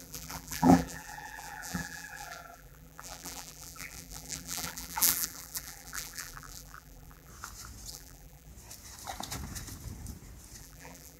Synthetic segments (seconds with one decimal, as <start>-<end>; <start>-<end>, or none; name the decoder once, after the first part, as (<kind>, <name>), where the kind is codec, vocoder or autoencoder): 0.0-7.3 (vocoder, BigVGAN v2); 7.9-8.5; 10.6-11.2